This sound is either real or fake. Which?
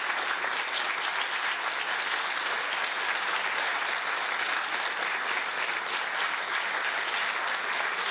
real